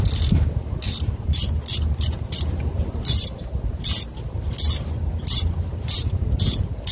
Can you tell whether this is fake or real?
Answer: real